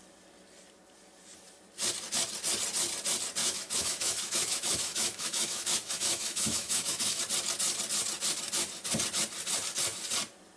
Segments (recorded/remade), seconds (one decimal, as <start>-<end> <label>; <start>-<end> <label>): 0.0-3.4 recorded; 3.4-7.2 remade; 7.2-10.6 recorded